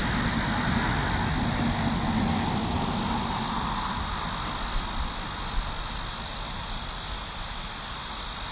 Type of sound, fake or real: real